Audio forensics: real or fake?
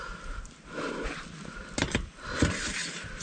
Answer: real